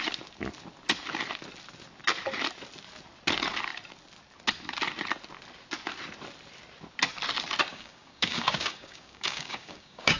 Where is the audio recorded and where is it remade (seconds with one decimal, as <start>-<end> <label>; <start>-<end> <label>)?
0.0-7.7 recorded; 7.7-10.2 remade